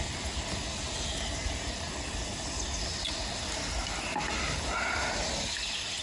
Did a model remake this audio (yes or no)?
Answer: no